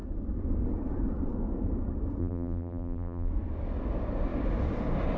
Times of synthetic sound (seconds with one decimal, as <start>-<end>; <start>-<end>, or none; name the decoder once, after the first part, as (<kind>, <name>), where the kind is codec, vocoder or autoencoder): 2.2-3.3 (vocoder, BigVGAN v2)